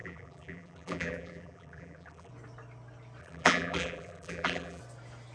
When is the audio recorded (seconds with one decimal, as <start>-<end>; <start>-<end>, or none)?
2.3-3.2; 4.8-5.3